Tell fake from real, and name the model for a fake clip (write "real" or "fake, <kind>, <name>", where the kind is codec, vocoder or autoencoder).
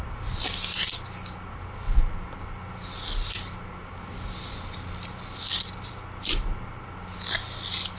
real